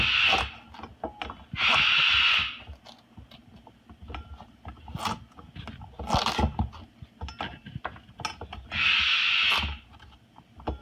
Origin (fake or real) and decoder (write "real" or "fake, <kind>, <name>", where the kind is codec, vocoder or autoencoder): real